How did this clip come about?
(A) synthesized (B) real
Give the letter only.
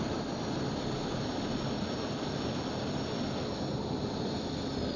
B